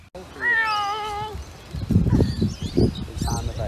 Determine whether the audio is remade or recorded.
recorded